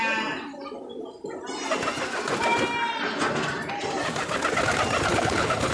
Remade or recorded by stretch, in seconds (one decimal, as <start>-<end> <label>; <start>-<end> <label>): 0.0-5.1 recorded; 5.1-5.7 remade